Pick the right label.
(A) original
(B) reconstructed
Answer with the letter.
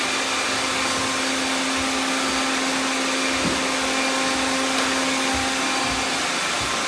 A